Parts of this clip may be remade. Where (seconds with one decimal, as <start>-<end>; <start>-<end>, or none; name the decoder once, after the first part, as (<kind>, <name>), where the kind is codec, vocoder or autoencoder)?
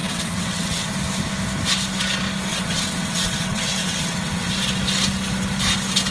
0.0-0.9 (vocoder, WaveNeXt); 2.5-4.5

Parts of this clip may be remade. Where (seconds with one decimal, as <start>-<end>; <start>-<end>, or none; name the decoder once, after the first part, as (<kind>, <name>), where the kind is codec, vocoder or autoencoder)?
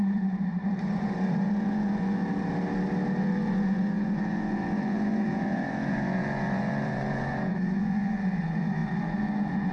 0.0-2.2 (vocoder, Vocos); 3.2-9.7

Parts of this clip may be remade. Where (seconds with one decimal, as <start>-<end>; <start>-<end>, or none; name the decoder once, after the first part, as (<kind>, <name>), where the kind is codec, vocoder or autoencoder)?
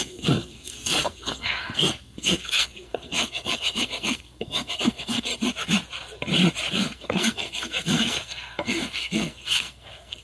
0.0-5.3 (codec, SNAC); 6.7-10.2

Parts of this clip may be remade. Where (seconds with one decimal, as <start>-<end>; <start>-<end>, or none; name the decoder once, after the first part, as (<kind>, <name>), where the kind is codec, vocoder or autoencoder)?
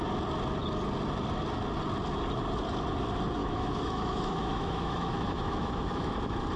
3.4-6.1 (autoencoder, DAC-VAE)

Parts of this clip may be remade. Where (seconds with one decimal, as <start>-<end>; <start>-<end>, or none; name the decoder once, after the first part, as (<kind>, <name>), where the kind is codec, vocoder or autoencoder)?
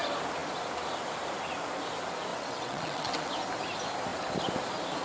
2.3-3.3 (vocoder, WaveNeXt)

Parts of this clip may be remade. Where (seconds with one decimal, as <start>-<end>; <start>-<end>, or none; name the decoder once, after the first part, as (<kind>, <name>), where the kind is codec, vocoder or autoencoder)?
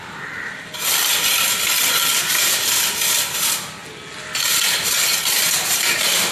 none